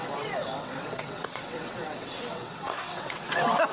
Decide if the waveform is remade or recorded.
remade